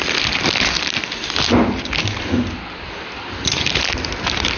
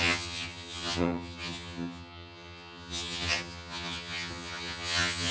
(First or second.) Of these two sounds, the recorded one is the first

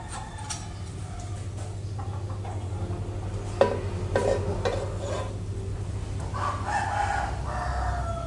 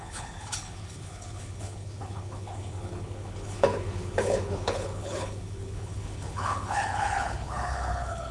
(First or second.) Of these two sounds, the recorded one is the first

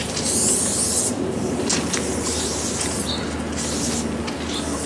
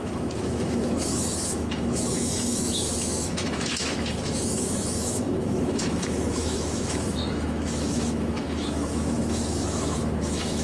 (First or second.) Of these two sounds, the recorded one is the first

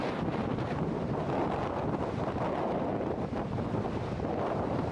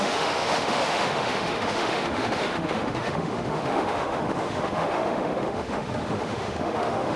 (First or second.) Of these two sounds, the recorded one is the first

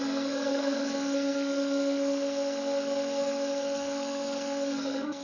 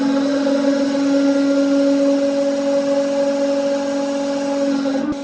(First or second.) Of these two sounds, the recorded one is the second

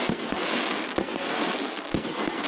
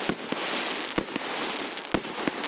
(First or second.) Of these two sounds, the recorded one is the second